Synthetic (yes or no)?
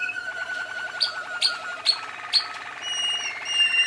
yes